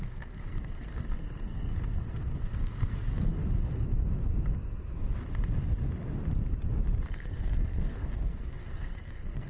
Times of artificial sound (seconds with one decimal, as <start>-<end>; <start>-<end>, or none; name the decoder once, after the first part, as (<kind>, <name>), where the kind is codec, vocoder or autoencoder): 0.0-3.4 (codec, SNAC); 7.1-9.5